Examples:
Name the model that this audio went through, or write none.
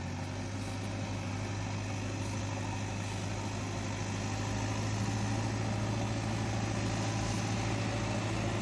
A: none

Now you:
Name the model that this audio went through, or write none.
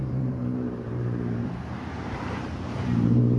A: vocoder, BigVGAN v2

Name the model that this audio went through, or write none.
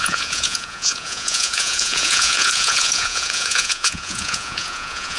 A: vocoder, Vocos